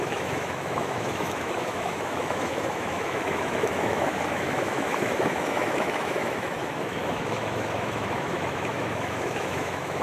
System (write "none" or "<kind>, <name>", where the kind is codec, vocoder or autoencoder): autoencoder, DAC-VAE